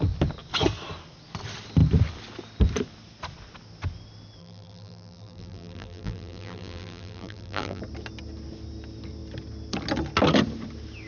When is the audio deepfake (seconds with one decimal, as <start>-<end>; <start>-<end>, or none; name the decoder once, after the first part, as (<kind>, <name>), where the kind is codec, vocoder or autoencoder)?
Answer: 4.4-7.8 (vocoder, BigVGAN v2)